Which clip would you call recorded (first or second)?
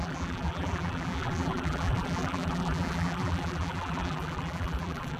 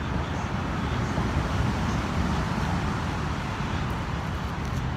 second